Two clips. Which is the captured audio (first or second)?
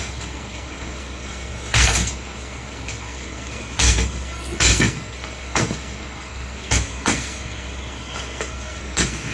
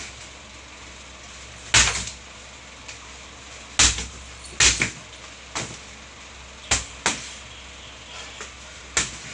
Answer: second